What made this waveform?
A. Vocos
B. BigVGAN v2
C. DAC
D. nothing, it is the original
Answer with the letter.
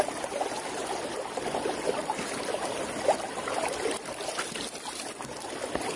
D